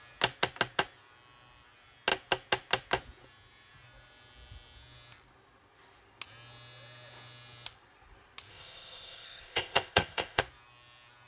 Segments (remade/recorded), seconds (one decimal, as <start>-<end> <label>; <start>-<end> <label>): 0.0-8.5 recorded; 8.5-10.4 remade; 10.4-11.3 recorded